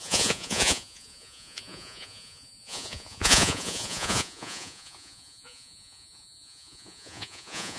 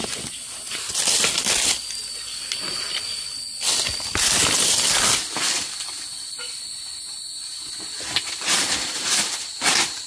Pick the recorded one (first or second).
second